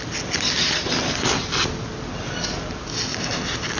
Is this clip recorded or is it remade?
recorded